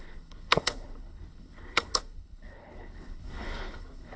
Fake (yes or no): yes